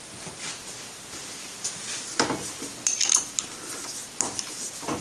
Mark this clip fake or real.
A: real